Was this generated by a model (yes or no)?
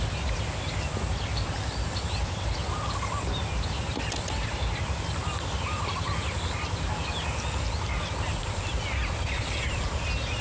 no